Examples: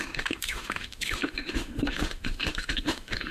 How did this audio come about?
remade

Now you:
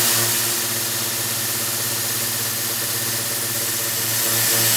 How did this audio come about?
recorded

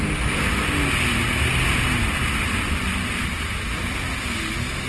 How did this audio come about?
recorded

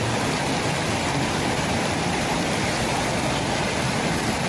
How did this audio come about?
remade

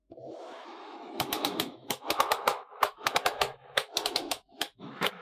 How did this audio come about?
remade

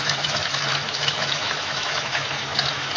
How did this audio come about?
remade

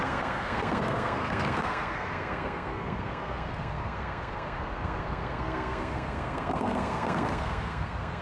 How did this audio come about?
remade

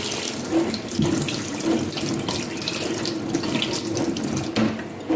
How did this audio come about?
recorded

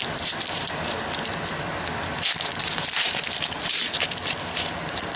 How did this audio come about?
remade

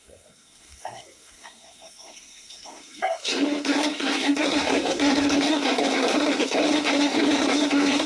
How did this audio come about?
remade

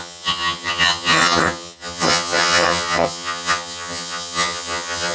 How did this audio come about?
remade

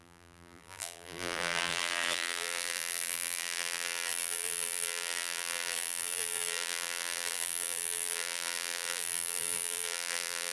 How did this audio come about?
remade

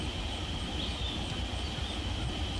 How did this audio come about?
recorded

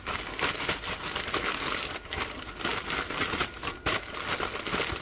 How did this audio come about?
recorded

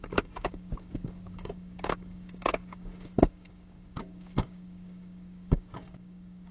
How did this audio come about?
remade